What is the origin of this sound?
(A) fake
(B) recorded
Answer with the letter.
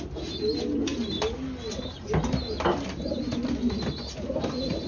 B